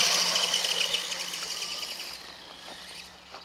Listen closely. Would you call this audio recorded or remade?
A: recorded